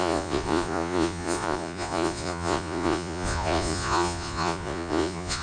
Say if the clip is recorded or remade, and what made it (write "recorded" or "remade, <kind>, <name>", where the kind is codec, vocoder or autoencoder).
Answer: remade, vocoder, Vocos